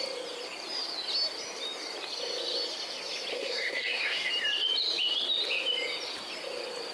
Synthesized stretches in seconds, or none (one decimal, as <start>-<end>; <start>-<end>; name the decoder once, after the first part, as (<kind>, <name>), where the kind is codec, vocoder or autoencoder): 3.3-4.3 (codec, SNAC)